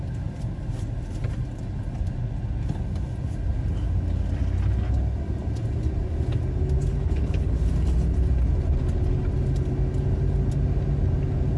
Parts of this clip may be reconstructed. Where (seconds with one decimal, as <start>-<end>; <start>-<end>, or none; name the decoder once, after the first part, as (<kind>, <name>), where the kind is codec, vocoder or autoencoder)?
7.0-7.7 (codec, HILCodec)